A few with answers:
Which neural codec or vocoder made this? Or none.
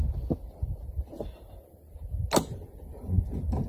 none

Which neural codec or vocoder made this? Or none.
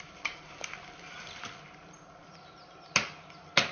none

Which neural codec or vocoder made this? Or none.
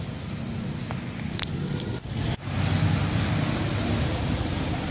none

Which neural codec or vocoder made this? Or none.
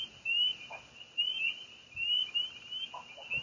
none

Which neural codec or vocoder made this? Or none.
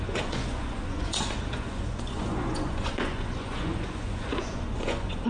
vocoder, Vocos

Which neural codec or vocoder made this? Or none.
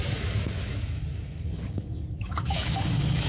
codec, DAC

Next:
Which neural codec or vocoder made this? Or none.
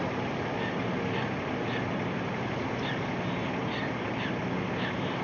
none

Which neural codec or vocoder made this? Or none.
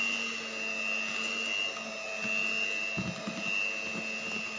none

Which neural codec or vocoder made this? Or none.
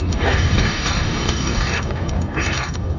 codec, DAC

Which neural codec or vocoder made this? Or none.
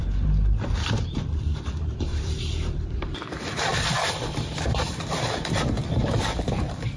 vocoder, BigVGAN v2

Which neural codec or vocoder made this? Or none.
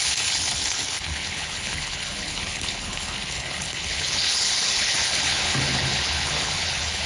codec, HILCodec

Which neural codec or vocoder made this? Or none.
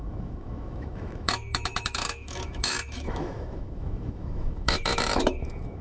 autoencoder, DAC-VAE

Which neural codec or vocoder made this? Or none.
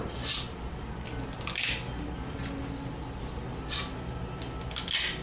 none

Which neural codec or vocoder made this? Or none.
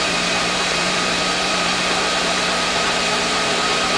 vocoder, BigVGAN v2